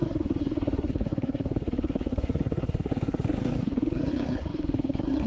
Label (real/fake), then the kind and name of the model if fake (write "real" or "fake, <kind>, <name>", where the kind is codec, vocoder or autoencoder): fake, codec, SNAC